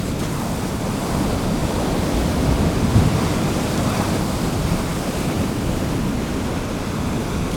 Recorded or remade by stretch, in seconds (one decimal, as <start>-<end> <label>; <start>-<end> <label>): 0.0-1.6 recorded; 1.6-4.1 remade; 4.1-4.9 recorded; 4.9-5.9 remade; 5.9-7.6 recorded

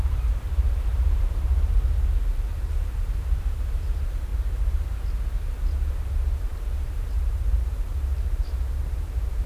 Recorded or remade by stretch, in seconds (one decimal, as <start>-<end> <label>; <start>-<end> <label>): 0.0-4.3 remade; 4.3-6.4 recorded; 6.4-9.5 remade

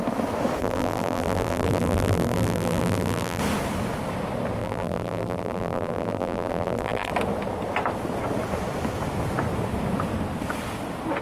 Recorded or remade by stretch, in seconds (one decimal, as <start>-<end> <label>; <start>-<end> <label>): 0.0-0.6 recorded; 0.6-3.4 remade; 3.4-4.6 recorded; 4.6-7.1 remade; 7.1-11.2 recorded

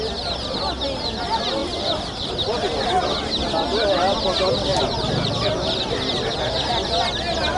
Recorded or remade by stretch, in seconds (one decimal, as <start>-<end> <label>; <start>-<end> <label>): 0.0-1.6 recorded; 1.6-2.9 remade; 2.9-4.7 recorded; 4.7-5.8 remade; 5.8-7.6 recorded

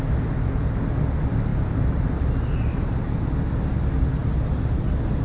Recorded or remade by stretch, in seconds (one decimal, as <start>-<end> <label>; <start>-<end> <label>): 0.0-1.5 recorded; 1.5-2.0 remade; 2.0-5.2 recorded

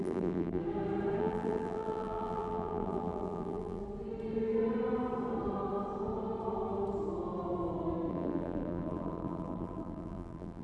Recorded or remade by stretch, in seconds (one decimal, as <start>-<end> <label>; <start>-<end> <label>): 0.0-0.6 remade; 0.6-1.2 recorded; 1.2-3.8 remade; 3.8-8.1 recorded; 8.1-10.6 remade

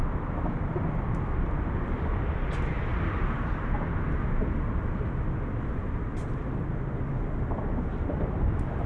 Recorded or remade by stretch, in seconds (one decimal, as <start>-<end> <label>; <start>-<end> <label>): 0.0-2.9 recorded; 2.9-3.8 remade; 3.8-8.9 recorded

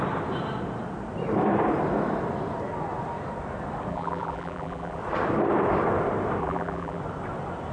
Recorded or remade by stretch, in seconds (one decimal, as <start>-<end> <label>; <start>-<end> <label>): 0.0-3.9 recorded; 3.9-5.0 remade; 5.0-6.4 recorded; 6.4-7.0 remade; 7.0-7.7 recorded